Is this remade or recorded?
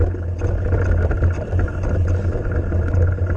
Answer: recorded